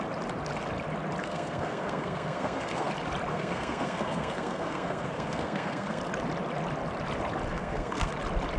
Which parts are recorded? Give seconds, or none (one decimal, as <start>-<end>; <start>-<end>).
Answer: 0.0-1.2; 2.9-3.3; 6.0-7.5; 8.1-8.6